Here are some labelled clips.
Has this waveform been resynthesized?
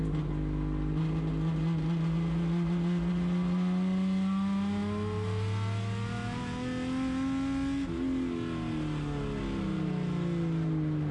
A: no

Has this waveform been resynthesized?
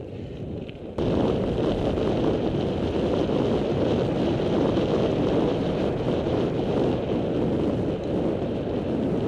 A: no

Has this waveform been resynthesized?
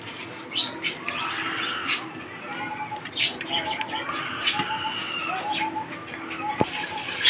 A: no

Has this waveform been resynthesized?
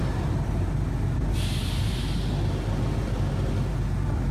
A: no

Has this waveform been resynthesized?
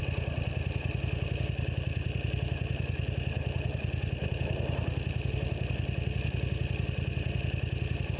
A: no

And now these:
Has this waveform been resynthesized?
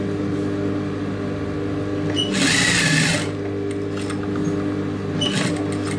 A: no